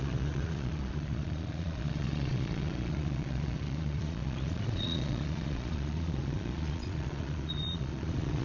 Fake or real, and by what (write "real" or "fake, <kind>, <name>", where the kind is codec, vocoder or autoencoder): fake, vocoder, Vocos